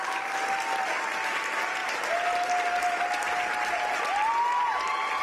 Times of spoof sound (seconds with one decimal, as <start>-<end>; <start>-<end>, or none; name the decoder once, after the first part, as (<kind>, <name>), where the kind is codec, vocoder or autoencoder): none

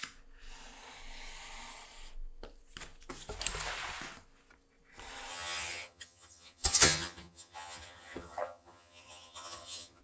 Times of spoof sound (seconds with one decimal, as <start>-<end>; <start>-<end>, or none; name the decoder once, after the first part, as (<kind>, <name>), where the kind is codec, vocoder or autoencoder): 5.3-10.0 (vocoder, HiFi-GAN)

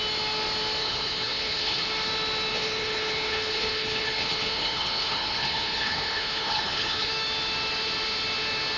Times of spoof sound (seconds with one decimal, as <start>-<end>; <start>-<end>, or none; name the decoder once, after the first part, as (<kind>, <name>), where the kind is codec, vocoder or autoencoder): 0.8-1.9 (codec, HILCodec); 2.5-7.1